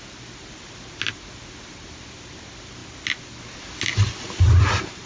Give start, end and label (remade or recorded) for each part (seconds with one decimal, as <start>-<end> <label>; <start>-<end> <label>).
0.0-5.1 recorded